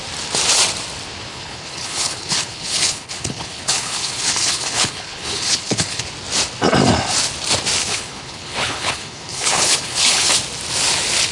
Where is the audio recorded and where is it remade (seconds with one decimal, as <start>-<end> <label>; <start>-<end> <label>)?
0.0-1.3 recorded; 1.3-6.0 remade; 6.0-7.8 recorded; 7.8-10.3 remade; 10.3-11.3 recorded